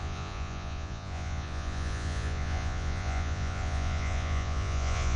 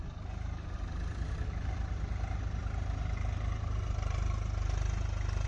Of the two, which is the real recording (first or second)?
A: second